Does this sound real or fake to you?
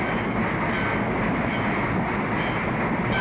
real